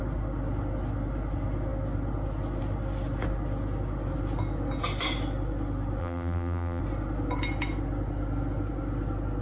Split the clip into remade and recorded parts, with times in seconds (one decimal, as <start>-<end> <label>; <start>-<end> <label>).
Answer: 0.0-6.0 recorded; 6.0-6.8 remade; 6.8-9.4 recorded